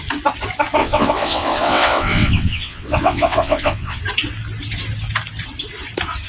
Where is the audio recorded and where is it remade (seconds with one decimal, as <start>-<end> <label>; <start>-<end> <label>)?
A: 0.0-0.8 recorded; 0.8-4.0 remade; 4.0-6.3 recorded